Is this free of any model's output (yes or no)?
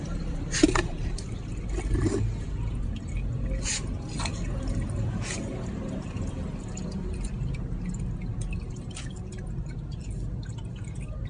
yes